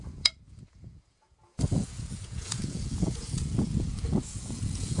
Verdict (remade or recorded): remade